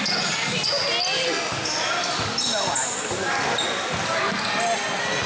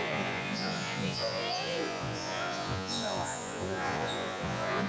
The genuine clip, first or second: first